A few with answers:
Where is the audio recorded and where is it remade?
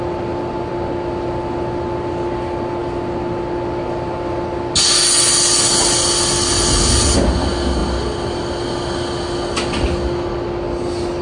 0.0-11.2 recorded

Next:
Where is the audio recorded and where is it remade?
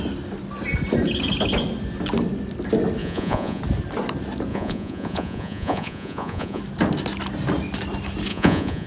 0.0-3.0 recorded; 3.0-3.6 remade; 3.6-4.5 recorded; 4.5-6.6 remade; 6.6-8.3 recorded; 8.3-8.9 remade